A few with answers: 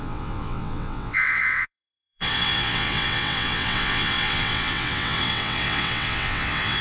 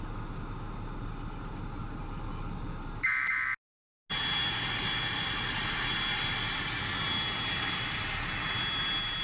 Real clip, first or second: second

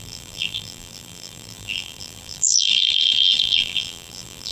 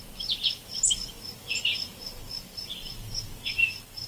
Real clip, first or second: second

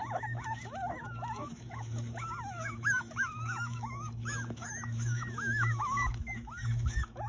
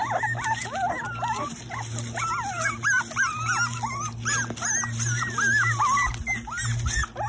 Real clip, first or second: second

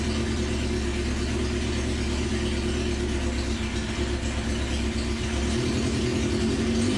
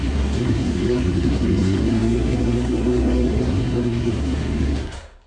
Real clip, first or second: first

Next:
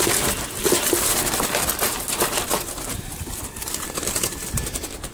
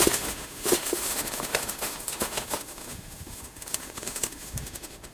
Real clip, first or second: first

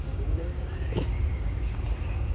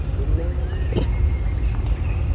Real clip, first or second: second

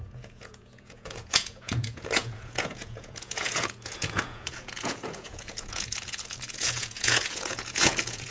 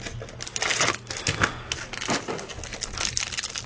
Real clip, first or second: second